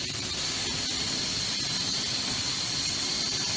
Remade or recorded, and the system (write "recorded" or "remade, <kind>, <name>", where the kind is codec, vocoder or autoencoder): recorded